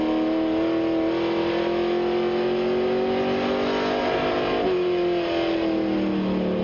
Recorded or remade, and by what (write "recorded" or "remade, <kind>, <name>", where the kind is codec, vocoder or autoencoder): recorded